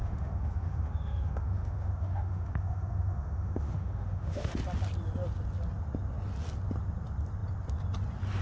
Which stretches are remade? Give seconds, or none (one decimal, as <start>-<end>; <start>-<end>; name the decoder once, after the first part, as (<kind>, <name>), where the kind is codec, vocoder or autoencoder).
0.0-4.5 (autoencoder, DAC-VAE)